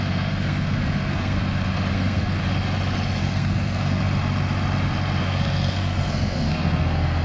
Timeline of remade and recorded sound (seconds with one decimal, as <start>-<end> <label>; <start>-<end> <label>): 0.0-1.4 remade; 1.4-1.9 recorded; 1.9-2.4 remade; 2.4-3.2 recorded; 3.2-4.0 remade; 4.0-5.2 recorded; 5.2-7.2 remade